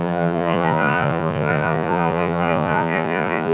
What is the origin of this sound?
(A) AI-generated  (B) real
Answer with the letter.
A